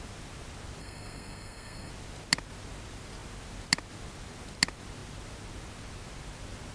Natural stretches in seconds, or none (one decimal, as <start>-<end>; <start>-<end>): 0.0-0.8; 1.9-6.7